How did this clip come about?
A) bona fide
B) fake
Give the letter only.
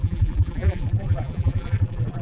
B